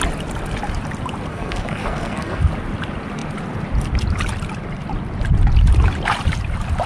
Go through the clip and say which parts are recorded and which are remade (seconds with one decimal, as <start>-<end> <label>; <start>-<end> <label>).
0.0-1.3 recorded; 1.3-2.5 remade; 2.5-6.9 recorded